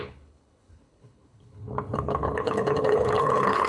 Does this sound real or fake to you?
fake